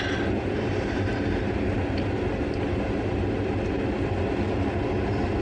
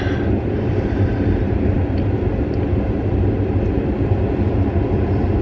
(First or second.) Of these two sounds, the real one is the first